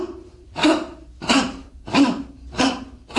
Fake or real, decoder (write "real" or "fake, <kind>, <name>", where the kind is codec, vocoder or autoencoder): fake, vocoder, BigVGAN v2